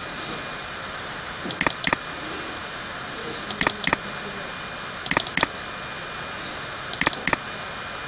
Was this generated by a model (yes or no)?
no